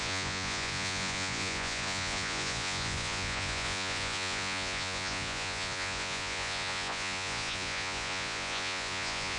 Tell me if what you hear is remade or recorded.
remade